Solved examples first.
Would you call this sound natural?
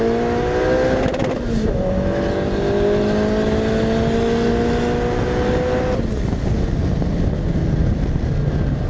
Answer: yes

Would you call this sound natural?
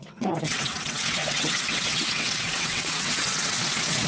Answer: no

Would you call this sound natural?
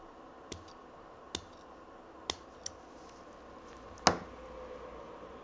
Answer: yes